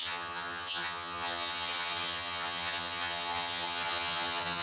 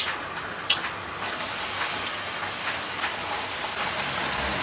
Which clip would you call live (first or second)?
second